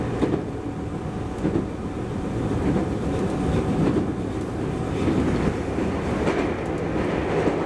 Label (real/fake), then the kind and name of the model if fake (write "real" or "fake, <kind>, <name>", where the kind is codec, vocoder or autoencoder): real